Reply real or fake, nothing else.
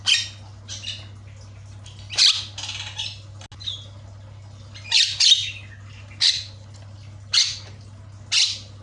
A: real